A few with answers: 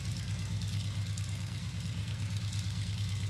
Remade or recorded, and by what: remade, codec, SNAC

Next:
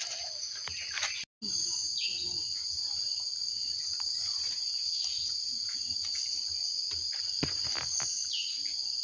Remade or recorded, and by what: recorded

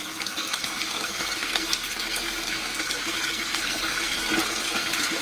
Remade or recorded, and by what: remade, codec, SNAC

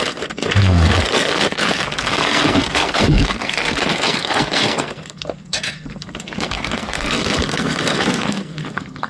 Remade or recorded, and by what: remade, codec, SNAC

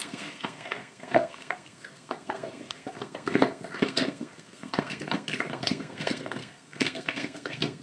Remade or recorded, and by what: remade, codec, SNAC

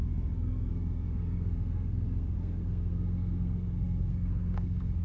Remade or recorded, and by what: remade, codec, SNAC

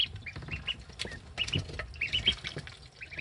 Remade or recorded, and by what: recorded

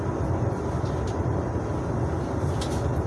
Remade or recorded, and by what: recorded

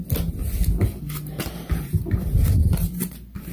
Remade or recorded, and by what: recorded